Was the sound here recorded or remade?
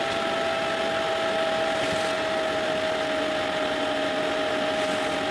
recorded